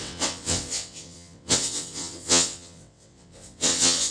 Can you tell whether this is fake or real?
fake